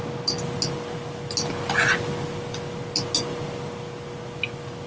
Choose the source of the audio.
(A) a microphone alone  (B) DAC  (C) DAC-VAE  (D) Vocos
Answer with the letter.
A